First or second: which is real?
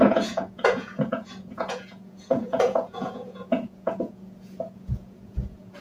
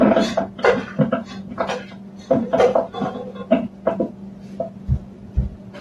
second